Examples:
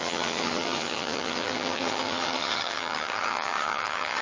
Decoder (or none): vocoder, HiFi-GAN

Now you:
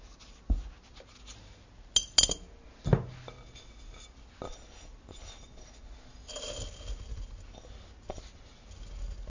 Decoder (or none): none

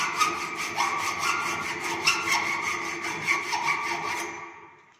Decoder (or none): none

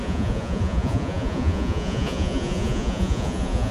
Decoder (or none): vocoder, Vocos